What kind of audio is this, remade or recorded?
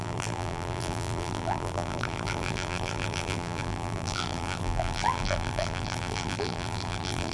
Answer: remade